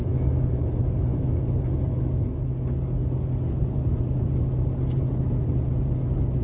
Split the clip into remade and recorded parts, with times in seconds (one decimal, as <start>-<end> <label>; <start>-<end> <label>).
0.0-6.4 recorded